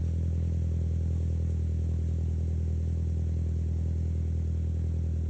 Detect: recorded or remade recorded